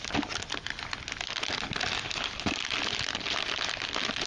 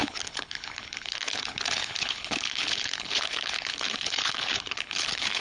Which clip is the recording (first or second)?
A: first